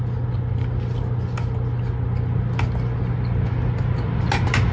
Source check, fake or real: real